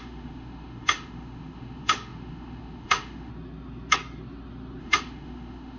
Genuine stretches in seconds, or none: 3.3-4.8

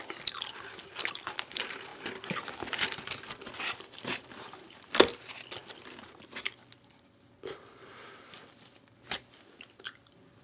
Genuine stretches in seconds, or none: 1.9-3.6; 5.6-9.4

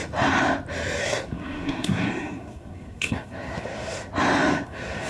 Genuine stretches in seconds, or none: 0.0-1.0; 4.1-4.5

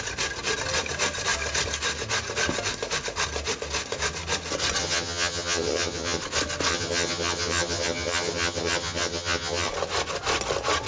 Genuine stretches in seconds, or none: 0.0-4.8; 6.2-6.7; 9.7-10.9

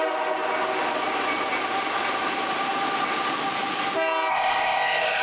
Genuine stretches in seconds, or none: 0.0-4.3

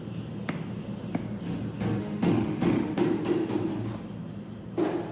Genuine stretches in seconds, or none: 0.0-2.0; 3.0-5.1

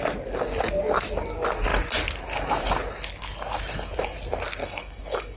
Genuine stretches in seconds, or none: 0.0-4.6